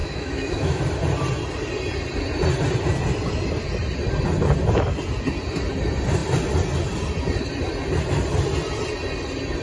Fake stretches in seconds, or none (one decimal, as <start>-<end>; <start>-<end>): 0.0-0.8